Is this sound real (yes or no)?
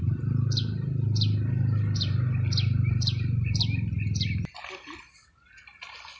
yes